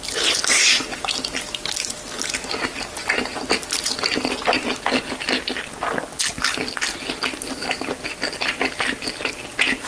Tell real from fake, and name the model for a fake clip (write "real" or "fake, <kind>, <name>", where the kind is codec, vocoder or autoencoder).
real